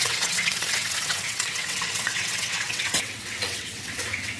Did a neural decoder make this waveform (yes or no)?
yes